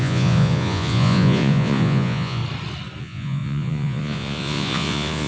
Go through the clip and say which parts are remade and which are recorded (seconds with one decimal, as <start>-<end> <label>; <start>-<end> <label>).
0.0-2.4 remade; 2.4-3.0 recorded; 3.0-5.3 remade